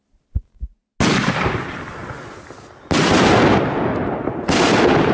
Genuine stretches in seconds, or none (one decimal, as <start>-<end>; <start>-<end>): 0.0-5.1